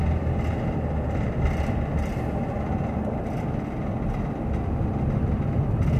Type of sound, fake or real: real